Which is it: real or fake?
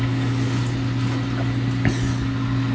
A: real